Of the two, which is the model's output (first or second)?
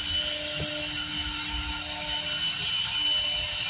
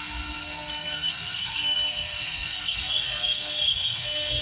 second